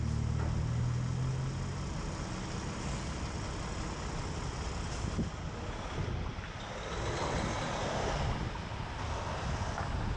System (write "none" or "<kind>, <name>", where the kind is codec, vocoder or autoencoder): none